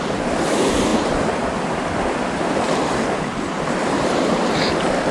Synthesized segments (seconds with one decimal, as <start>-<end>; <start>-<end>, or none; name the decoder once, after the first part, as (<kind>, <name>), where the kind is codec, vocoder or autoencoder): 0.9-2.5 (vocoder, BigVGAN v2)